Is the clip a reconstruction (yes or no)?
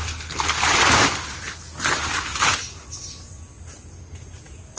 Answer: no